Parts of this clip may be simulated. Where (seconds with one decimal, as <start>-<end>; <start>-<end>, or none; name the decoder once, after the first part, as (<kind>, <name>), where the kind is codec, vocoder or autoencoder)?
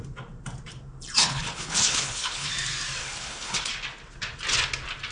1.2-2.5 (codec, HILCodec); 3.0-3.7